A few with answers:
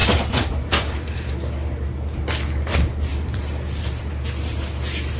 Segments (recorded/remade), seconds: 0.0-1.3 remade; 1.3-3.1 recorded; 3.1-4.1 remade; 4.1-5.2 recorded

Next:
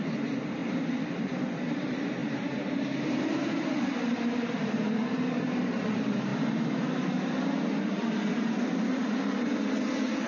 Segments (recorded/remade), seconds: 0.0-0.6 remade; 0.6-1.7 recorded; 1.7-10.3 remade